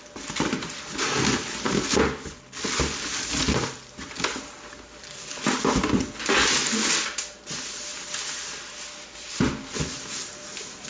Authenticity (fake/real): real